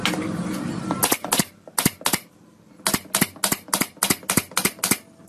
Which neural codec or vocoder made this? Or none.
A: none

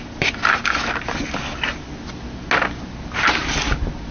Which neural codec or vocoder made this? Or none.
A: none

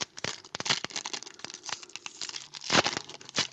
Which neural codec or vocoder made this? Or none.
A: none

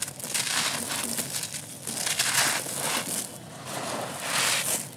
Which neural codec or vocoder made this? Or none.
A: none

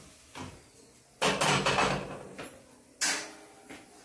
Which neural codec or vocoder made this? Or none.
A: none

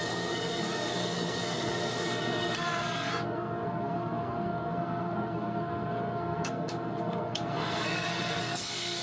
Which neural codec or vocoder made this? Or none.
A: codec, SNAC